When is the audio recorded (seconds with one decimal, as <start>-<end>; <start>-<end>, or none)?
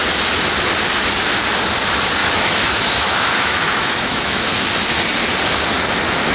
0.0-2.2; 4.4-6.3